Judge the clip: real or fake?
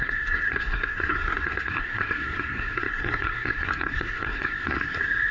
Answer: fake